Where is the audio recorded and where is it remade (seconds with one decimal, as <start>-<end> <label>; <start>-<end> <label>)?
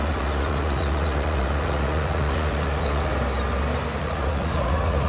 0.0-3.1 remade; 3.1-4.0 recorded; 4.0-5.1 remade